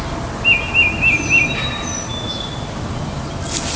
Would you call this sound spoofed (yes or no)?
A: no